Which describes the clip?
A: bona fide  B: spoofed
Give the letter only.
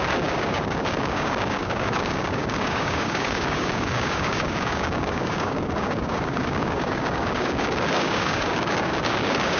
B